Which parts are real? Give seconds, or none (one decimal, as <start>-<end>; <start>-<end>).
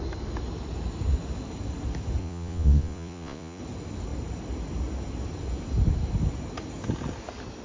0.0-2.2; 3.6-7.6